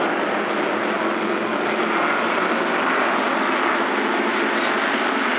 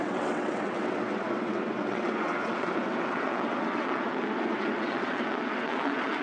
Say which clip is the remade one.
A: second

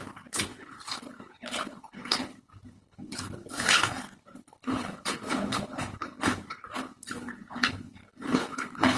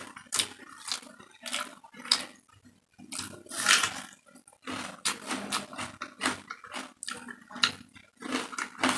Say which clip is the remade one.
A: first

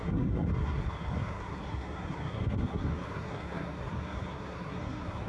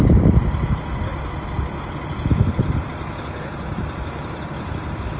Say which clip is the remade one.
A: first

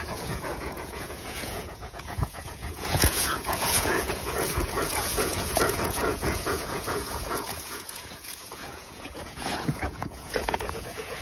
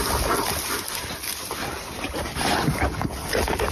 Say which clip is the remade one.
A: first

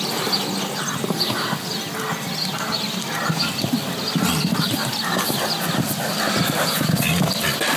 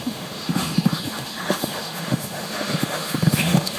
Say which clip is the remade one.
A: second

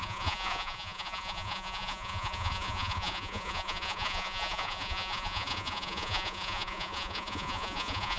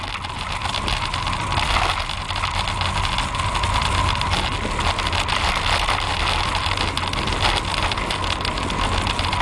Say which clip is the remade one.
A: first